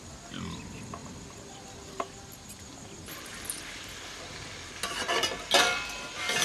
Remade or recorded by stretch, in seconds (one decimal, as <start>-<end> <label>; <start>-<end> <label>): 0.0-6.4 recorded